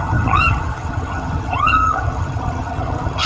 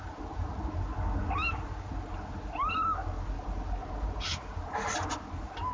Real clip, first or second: second